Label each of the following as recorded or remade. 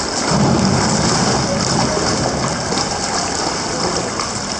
recorded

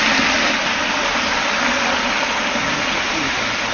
recorded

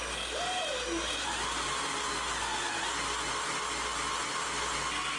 recorded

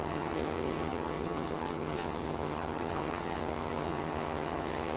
remade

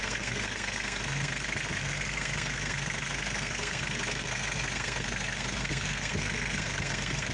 remade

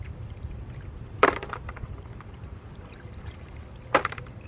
remade